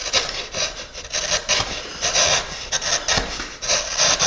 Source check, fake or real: real